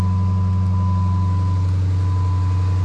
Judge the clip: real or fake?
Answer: real